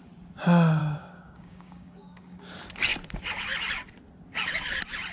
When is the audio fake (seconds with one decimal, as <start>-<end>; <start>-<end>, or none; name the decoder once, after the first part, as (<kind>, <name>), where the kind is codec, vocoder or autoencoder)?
0.8-2.4 (codec, DAC)